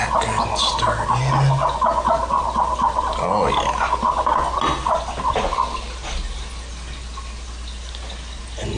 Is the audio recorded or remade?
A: recorded